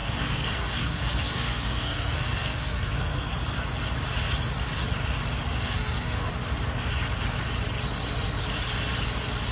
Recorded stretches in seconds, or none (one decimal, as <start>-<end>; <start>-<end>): 3.3-5.5; 6.3-9.5